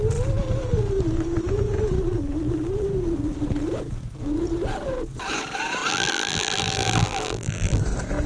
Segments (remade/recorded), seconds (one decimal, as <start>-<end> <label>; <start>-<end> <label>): 0.0-5.9 recorded; 5.9-7.8 remade; 7.8-8.3 recorded